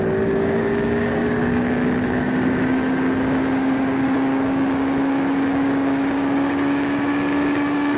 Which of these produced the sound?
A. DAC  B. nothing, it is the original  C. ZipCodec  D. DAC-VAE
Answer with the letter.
A